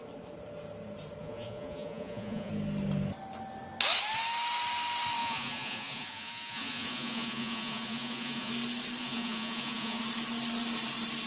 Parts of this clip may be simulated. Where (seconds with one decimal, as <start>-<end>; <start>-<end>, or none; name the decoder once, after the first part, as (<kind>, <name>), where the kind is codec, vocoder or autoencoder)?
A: 1.2-2.5 (vocoder, Vocos); 5.2-8.5; 9.0-10.0